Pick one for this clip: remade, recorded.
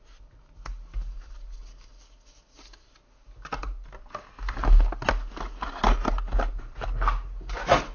recorded